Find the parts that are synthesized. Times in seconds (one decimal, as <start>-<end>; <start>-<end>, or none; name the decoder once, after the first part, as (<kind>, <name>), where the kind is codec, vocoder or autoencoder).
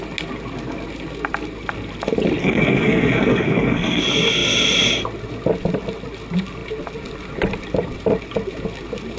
2.4-4.0 (codec, SNAC)